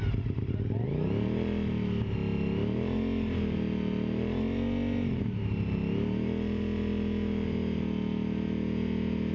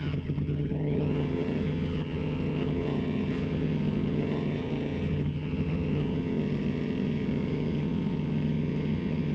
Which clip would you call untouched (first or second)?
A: first